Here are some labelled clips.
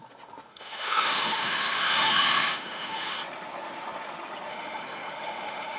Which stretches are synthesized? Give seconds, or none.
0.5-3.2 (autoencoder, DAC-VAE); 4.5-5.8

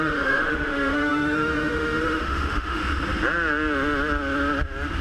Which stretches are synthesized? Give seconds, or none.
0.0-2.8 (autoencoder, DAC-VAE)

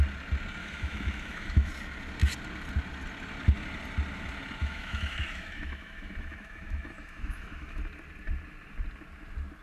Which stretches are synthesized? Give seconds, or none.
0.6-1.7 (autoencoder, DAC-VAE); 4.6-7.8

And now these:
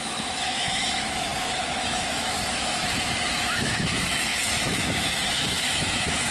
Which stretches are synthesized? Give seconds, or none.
0.0-6.3 (autoencoder, DAC-VAE)

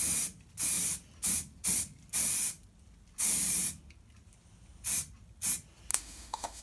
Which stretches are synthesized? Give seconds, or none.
5.9-6.6 (autoencoder, DAC-VAE)

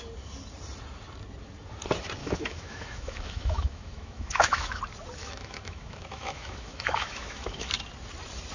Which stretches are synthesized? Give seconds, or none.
2.2-4.8 (autoencoder, DAC-VAE); 5.2-7.7